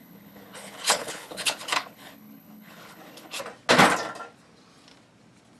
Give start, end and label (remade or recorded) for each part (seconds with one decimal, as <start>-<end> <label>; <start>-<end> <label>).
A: 0.0-3.4 remade; 3.4-5.6 recorded